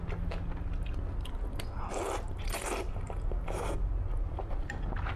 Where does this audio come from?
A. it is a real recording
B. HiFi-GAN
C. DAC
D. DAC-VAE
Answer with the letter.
A